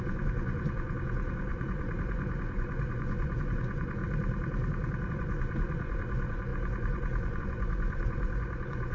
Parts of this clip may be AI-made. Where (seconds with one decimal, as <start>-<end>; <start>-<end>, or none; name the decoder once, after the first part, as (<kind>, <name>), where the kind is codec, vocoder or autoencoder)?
0.0-4.0 (vocoder, Vocos); 5.1-8.9